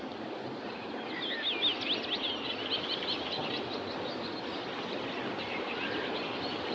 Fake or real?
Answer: real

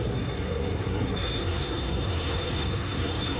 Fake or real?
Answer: fake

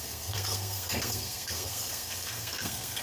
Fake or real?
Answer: fake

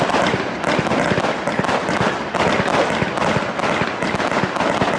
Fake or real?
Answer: real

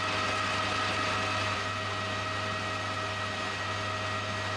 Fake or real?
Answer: real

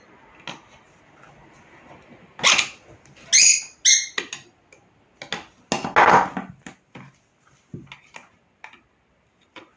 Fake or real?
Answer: real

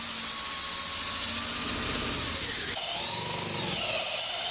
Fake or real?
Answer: real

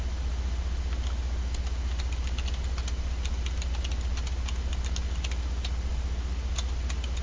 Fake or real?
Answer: real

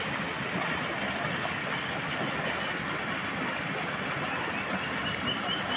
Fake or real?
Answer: real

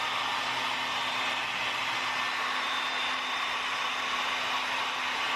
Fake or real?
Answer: real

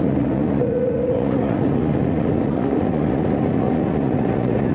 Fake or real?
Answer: fake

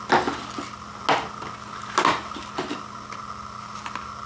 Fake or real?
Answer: real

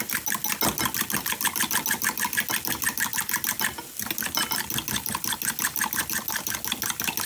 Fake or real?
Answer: real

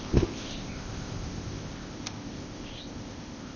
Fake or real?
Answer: fake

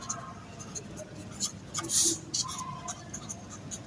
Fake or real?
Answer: real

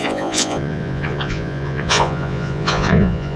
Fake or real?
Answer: fake